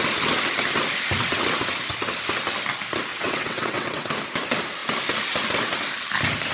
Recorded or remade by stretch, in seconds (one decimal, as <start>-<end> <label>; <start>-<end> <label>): 0.0-3.1 recorded; 3.1-4.1 remade; 4.1-6.5 recorded

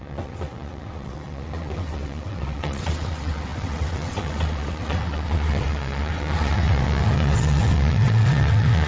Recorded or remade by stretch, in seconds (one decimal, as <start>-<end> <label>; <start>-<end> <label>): 0.0-8.9 remade